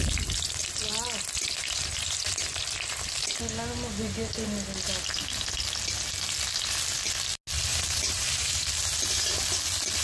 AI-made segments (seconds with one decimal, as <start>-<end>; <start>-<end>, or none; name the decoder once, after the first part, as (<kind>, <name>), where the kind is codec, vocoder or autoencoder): 1.6-2.2 (vocoder, BigVGAN v2); 7.7-8.7